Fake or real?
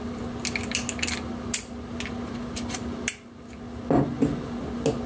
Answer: real